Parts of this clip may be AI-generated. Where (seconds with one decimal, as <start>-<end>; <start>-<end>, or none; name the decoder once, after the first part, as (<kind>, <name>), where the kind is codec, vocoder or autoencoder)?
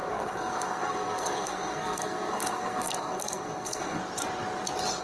0.0-4.0 (codec, SNAC)